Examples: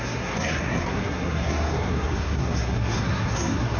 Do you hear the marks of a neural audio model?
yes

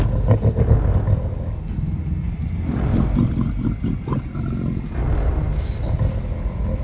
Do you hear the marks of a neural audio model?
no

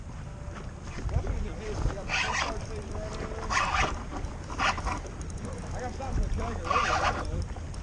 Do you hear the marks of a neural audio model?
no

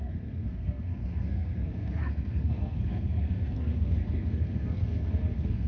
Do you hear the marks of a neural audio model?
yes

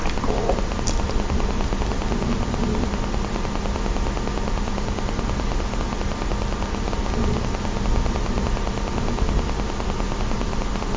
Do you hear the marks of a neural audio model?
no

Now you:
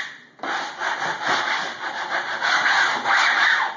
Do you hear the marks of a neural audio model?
no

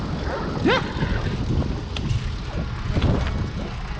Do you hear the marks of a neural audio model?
no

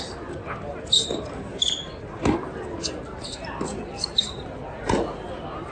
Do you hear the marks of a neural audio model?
no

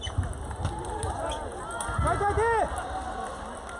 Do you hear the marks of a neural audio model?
no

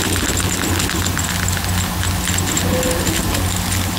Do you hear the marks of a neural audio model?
no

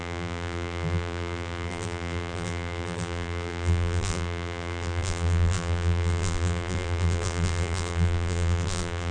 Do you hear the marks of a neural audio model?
yes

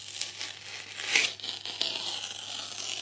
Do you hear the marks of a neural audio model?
no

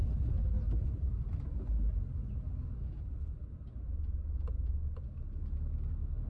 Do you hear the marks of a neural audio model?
no